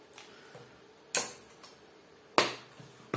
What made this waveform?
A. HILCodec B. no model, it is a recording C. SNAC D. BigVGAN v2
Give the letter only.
B